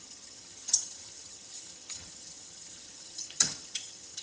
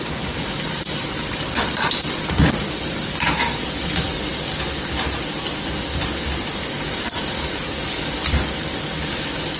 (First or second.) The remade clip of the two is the first